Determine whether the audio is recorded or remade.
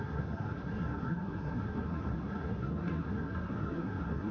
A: remade